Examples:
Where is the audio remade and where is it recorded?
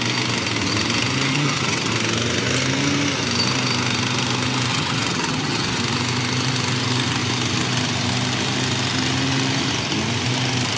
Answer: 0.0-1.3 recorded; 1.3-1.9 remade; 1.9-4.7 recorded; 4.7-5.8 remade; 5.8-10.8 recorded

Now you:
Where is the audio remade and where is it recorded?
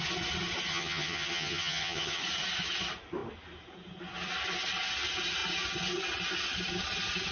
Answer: 0.0-0.7 recorded; 0.7-2.2 remade; 2.2-7.3 recorded